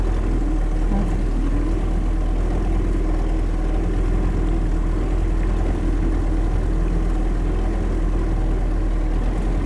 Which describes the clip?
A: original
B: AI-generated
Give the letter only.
A